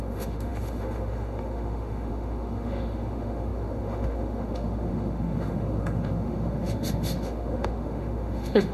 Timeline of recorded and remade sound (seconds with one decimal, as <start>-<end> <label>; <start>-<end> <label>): 0.0-8.7 remade